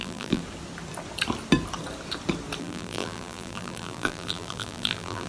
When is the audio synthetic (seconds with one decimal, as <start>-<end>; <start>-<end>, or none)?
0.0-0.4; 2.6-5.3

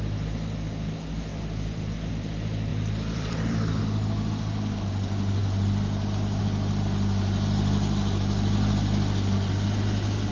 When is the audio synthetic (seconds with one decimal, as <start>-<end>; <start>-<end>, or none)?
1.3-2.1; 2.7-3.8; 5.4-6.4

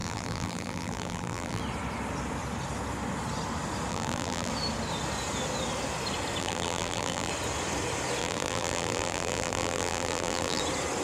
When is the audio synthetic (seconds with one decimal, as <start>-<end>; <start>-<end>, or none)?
0.0-1.6; 3.9-4.5; 6.4-7.3; 8.2-10.6

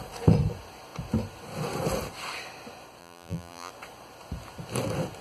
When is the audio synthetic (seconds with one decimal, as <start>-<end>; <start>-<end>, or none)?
3.0-3.7

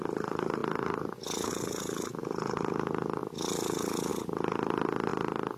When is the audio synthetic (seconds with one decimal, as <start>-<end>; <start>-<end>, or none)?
none

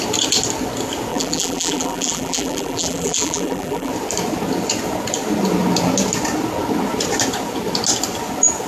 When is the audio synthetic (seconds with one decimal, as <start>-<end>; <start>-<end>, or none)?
1.1-3.9